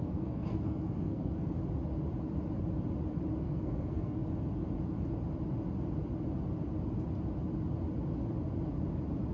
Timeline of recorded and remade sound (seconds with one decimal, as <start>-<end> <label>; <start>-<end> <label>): 0.0-1.6 remade; 1.6-3.4 recorded; 3.4-4.2 remade; 4.2-9.3 recorded

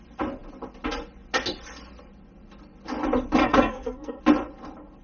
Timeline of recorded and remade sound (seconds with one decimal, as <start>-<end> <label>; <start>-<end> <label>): 0.0-3.4 recorded; 3.4-4.2 remade; 4.2-5.0 recorded

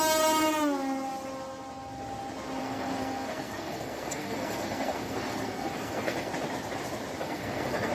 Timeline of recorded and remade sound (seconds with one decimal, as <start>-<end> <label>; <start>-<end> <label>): 0.0-2.6 recorded; 2.6-6.3 remade; 6.3-7.2 recorded; 7.2-7.9 remade

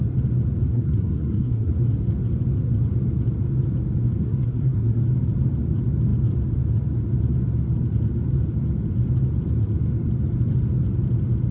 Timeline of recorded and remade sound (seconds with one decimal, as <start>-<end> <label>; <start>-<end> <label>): 0.0-0.7 recorded; 0.7-1.7 remade; 1.7-4.2 recorded; 4.2-5.0 remade; 5.0-11.5 recorded